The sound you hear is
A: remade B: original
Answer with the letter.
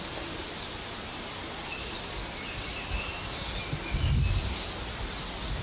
A